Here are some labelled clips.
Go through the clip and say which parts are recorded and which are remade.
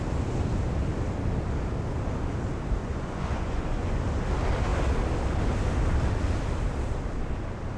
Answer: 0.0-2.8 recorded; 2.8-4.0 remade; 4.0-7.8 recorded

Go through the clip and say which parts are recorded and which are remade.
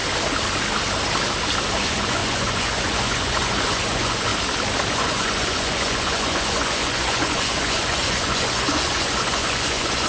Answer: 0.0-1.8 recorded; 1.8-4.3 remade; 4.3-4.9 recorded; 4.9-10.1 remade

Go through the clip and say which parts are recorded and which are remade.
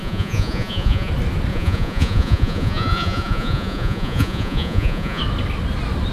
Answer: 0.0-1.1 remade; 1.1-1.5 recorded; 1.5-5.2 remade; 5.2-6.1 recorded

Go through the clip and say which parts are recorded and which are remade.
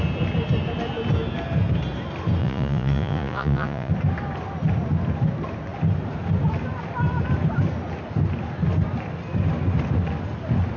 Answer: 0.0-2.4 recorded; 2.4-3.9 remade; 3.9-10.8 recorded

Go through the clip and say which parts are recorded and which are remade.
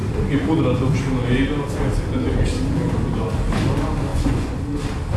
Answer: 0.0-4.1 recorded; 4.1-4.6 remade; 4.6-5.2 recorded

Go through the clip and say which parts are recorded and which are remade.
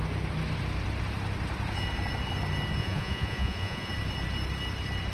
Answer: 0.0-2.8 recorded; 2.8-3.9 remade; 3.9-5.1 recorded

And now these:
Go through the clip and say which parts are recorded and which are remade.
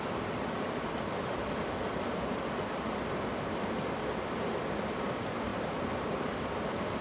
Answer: 0.0-7.0 recorded